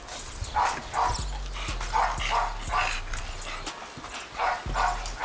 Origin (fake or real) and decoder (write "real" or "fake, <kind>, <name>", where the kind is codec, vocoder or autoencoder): real